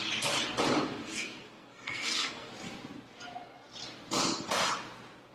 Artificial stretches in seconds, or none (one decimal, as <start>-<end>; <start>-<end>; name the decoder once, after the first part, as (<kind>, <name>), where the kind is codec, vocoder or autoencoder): 1.0-2.5 (codec, SNAC)